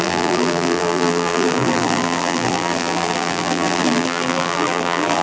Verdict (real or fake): fake